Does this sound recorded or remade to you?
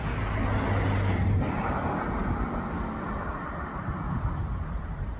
recorded